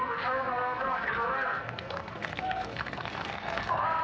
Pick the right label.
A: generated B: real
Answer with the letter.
A